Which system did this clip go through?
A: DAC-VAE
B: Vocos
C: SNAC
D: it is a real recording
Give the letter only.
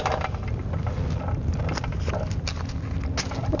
D